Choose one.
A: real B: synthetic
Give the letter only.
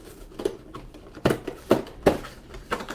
B